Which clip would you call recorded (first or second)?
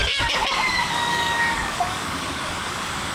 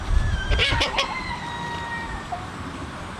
second